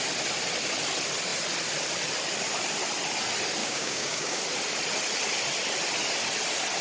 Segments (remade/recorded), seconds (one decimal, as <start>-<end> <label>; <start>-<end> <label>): 0.0-3.6 recorded; 3.6-4.4 remade; 4.4-6.8 recorded